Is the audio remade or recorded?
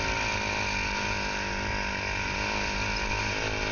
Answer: recorded